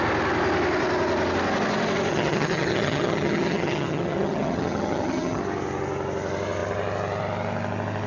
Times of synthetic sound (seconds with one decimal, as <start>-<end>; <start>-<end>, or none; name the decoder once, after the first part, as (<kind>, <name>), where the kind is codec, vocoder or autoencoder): 2.1-5.4 (vocoder, HiFi-GAN)